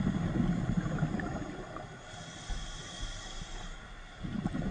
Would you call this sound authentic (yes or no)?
yes